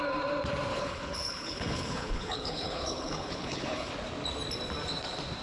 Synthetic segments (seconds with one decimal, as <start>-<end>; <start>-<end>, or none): 0.7-3.9